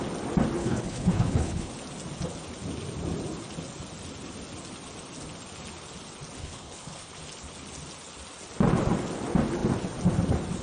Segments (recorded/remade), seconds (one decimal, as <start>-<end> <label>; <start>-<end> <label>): 0.0-0.6 recorded; 0.6-1.7 remade; 1.7-6.4 recorded; 6.4-7.1 remade; 7.1-10.6 recorded